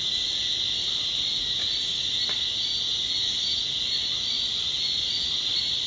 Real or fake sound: real